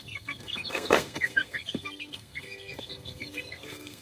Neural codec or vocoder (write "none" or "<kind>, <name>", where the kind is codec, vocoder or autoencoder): codec, SNAC